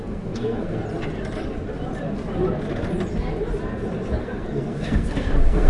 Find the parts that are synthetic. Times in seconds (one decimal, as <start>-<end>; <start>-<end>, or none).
0.0-0.8; 4.2-5.7